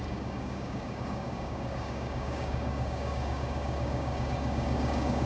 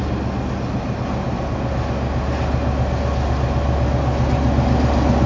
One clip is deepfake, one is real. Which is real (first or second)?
second